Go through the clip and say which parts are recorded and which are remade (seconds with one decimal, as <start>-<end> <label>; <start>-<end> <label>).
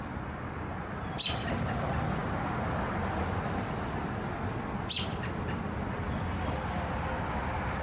0.0-7.8 recorded